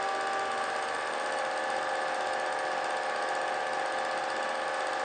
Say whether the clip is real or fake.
real